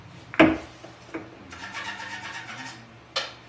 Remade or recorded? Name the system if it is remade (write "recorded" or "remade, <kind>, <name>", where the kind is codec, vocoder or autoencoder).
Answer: recorded